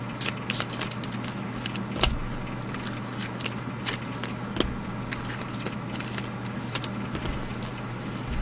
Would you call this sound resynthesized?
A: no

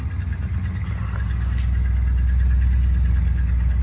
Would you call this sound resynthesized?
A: no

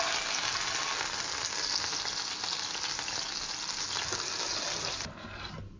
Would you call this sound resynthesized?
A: no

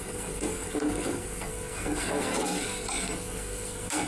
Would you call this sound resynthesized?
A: yes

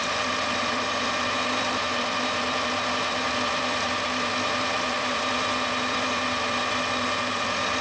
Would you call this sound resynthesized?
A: yes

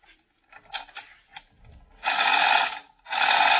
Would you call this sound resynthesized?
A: no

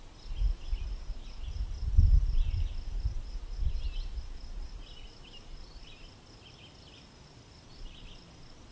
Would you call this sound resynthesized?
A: no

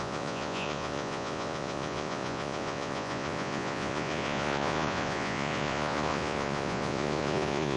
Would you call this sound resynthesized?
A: yes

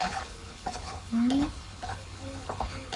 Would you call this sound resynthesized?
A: yes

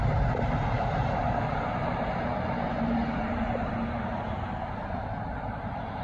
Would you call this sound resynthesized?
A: yes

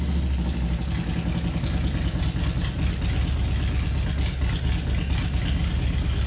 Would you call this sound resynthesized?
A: no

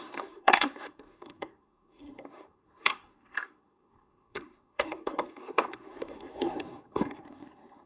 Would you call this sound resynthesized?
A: yes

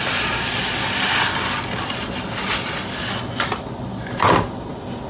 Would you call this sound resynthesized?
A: no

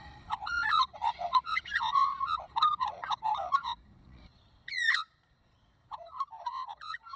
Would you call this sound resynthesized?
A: yes